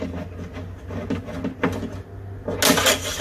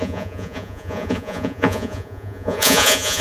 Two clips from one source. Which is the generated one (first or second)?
second